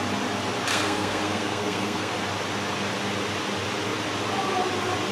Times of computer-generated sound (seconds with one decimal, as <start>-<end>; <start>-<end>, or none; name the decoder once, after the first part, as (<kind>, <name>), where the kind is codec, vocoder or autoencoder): 0.7-2.1 (codec, SNAC)